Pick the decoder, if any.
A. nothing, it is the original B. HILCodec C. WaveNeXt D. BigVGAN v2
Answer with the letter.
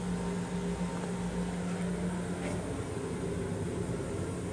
A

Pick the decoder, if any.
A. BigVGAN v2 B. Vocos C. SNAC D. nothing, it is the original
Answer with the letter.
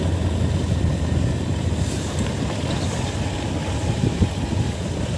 D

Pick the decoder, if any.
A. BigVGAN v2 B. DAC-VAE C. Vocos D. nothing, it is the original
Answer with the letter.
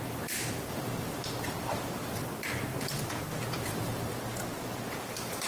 A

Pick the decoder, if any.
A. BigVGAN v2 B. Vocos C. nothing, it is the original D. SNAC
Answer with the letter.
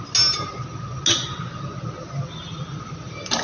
C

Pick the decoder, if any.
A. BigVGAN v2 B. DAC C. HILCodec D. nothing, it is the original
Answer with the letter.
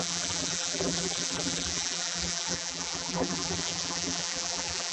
A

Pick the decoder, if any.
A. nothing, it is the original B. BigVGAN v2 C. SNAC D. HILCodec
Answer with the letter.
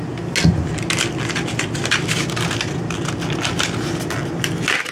A